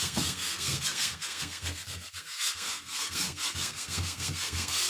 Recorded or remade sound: remade